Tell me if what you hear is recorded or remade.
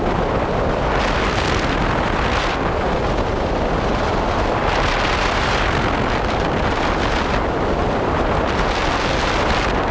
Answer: recorded